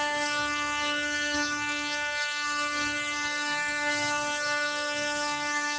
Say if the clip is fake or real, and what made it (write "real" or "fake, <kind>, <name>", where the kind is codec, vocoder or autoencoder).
fake, codec, SNAC